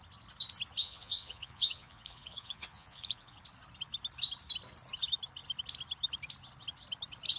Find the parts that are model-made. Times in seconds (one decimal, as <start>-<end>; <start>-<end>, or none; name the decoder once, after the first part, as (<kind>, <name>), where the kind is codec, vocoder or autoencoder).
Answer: 0.8-3.4 (vocoder, Vocos)